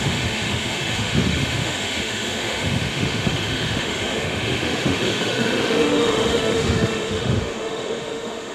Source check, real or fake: fake